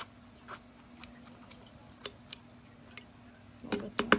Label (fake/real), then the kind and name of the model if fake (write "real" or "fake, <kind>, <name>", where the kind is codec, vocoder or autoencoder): real